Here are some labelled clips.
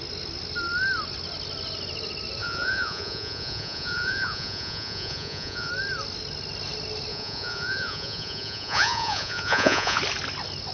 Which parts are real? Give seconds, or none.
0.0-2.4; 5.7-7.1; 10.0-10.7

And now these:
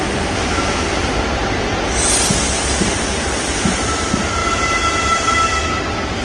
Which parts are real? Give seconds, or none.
0.0-6.2

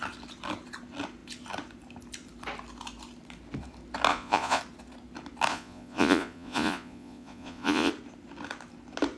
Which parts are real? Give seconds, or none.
0.0-4.1; 4.6-5.5; 7.9-9.2

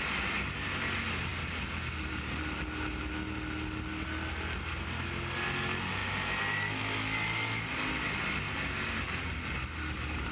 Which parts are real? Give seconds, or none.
0.0-10.3

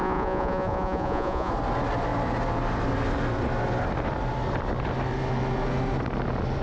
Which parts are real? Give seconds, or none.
1.5-6.6